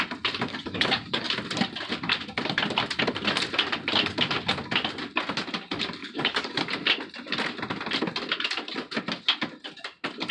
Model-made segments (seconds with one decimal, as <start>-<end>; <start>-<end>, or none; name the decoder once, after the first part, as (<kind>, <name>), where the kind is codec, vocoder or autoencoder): 0.5-1.3 (codec, DAC); 6.0-6.6